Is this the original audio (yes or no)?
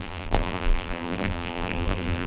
no